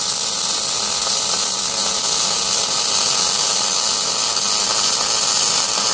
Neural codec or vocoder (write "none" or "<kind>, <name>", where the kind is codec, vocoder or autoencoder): none